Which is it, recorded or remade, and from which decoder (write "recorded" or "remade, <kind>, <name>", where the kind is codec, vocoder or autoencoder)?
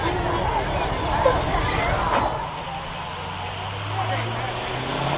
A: recorded